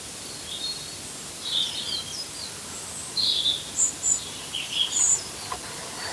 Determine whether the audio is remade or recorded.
recorded